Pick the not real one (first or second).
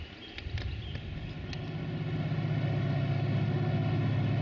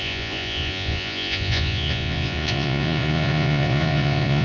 second